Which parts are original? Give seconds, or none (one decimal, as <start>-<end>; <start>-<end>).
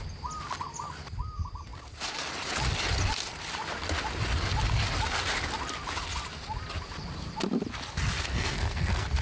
0.0-8.3